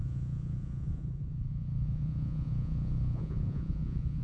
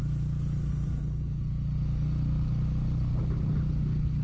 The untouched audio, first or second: second